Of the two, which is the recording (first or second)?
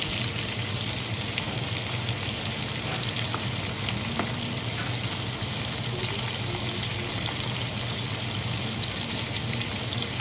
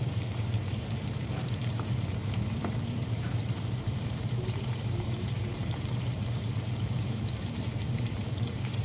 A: first